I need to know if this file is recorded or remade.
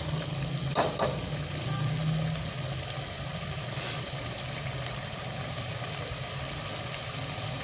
recorded